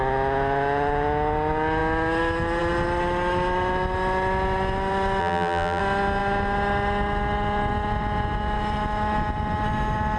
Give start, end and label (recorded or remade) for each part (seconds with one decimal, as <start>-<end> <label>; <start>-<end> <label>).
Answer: 0.0-5.2 recorded; 5.2-5.8 remade; 5.8-10.2 recorded